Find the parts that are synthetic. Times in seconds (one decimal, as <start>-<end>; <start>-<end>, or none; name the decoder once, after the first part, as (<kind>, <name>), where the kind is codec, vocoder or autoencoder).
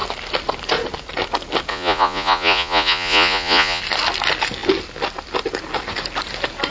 1.7-3.8 (vocoder, Vocos)